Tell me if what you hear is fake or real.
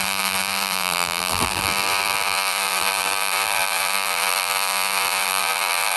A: fake